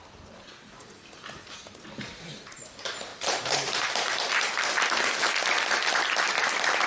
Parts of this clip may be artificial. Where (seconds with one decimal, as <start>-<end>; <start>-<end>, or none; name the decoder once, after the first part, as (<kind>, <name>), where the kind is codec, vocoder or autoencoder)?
3.1-4.7 (vocoder, BigVGAN v2)